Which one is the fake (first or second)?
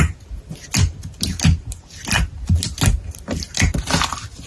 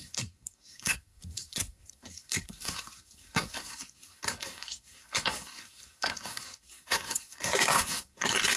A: second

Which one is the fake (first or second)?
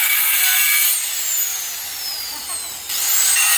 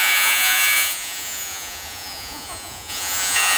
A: second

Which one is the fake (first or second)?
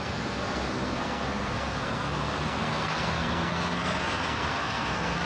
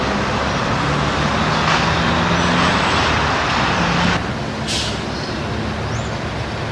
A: first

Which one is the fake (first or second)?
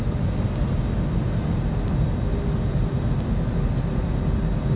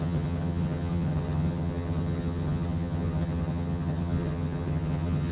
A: second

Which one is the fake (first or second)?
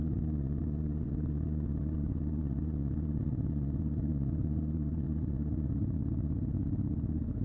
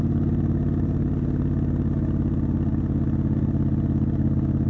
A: first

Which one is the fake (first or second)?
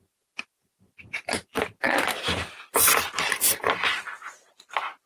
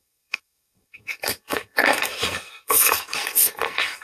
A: second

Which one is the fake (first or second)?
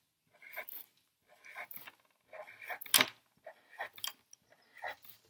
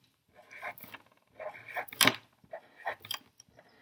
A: second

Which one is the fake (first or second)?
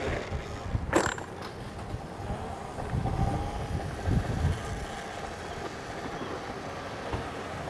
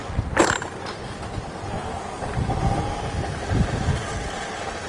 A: second